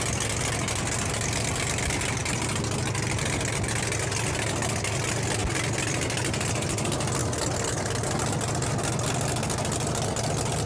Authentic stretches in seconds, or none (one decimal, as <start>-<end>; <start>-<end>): 0.0-10.7